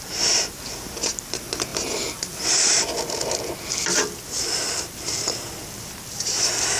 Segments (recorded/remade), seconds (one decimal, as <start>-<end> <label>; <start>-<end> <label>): 0.0-6.8 recorded